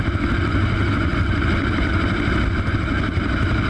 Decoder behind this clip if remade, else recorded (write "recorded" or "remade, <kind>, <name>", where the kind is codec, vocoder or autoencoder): recorded